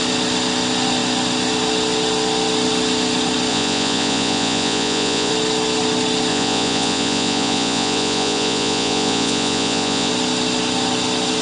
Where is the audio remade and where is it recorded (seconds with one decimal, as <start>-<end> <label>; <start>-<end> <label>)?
0.0-3.5 recorded; 3.5-5.3 remade; 5.3-6.3 recorded; 6.3-10.1 remade; 10.1-11.4 recorded